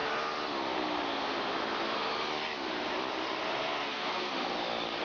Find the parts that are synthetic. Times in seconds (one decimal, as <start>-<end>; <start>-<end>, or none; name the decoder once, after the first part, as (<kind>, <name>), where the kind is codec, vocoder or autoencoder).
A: 3.8-4.3 (codec, SNAC)